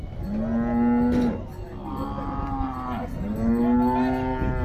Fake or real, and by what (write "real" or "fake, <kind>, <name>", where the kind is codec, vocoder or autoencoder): real